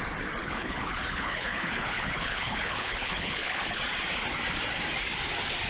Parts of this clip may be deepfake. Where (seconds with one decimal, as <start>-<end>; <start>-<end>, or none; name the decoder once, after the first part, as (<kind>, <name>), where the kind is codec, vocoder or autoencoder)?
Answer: 0.4-3.8 (codec, HILCodec)

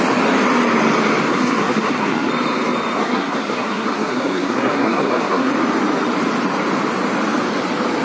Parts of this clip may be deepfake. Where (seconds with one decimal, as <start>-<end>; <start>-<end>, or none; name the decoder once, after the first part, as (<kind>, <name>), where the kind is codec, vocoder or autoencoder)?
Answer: 1.3-2.3 (codec, SNAC); 3.0-5.5

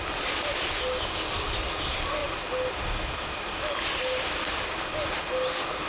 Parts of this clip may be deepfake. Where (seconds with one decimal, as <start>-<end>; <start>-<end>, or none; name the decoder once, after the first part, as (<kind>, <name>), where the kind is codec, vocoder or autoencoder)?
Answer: none

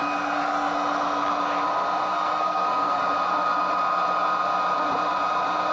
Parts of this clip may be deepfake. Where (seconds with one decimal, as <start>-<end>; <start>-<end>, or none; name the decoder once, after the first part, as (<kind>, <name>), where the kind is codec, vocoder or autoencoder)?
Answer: 2.1-3.0 (codec, SNAC)

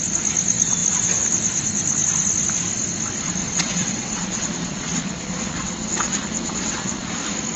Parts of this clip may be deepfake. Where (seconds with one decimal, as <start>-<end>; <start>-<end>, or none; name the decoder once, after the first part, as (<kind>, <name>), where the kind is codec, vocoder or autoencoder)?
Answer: 3.4-7.1 (vocoder, WaveNeXt)

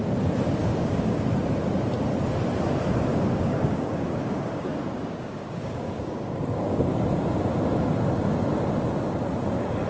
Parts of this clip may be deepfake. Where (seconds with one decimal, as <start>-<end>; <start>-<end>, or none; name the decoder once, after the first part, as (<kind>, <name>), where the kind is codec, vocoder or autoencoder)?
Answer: 0.6-1.3 (codec, DAC); 3.1-6.9

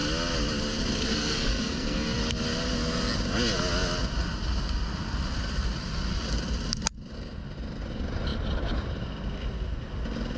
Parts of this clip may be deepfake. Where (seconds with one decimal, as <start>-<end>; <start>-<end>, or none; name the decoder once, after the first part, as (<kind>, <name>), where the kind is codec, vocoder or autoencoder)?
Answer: 1.1-2.2 (codec, SNAC)